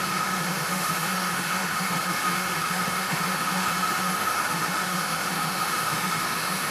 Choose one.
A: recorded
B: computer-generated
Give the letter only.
B